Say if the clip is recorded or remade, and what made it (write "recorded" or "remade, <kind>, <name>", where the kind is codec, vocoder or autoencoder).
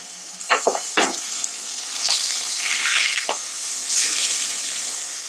remade, codec, SNAC